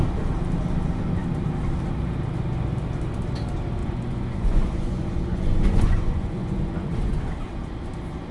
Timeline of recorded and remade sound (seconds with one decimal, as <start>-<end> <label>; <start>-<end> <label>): 0.0-3.8 recorded; 3.8-7.3 remade; 7.3-8.3 recorded